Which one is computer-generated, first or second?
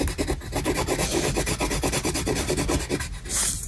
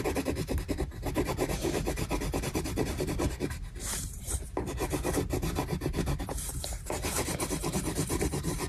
second